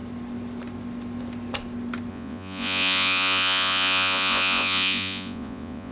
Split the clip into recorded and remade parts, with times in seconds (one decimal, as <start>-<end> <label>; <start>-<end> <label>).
0.0-2.1 recorded; 2.1-5.9 remade